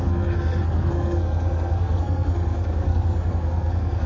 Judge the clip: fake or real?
fake